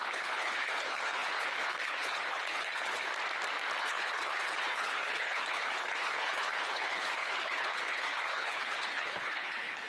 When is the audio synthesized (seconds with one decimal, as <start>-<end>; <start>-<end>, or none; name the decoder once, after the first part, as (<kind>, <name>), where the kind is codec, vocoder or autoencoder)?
0.0-3.1 (codec, HILCodec); 3.8-9.9